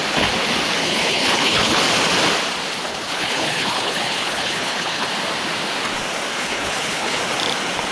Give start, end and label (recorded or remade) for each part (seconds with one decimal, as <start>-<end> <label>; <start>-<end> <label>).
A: 0.0-0.8 recorded; 0.8-1.8 remade; 1.8-2.9 recorded; 2.9-5.1 remade; 5.1-6.3 recorded; 6.3-7.2 remade; 7.2-7.9 recorded